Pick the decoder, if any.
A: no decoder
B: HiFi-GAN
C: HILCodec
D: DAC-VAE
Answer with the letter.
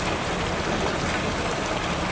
A